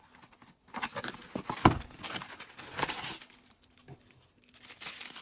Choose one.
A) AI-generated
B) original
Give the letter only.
B